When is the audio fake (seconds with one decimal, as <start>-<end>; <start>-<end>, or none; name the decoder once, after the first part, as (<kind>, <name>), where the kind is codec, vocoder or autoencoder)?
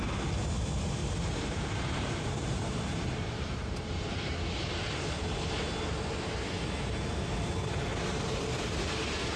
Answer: 1.0-4.4 (vocoder, BigVGAN v2); 7.9-8.7